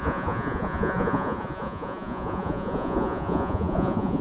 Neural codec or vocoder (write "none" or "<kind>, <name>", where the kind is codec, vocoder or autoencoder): vocoder, Vocos